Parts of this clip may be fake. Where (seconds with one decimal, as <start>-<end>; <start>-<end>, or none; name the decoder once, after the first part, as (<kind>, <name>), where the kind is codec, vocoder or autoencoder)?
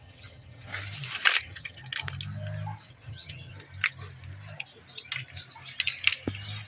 0.0-0.7 (vocoder, HiFi-GAN); 1.4-1.8; 2.9-3.5